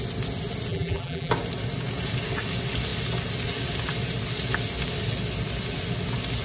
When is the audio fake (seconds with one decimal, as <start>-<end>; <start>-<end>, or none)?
0.7-1.3

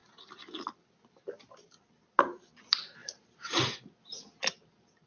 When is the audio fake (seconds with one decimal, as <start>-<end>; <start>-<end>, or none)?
0.0-1.8

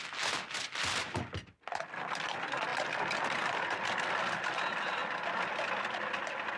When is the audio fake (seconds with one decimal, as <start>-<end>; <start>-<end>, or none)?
none

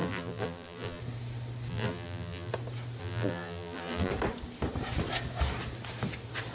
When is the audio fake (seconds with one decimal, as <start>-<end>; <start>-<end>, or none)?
0.0-1.0; 1.7-2.5; 3.0-4.1

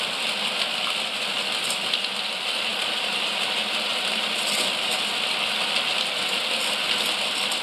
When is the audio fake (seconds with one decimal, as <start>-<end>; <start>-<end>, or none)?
2.7-3.5; 3.9-4.5

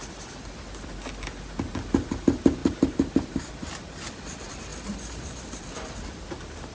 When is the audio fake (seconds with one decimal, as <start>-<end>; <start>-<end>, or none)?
2.6-3.5

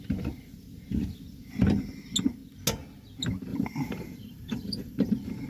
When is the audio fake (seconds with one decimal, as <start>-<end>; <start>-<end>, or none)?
3.5-5.1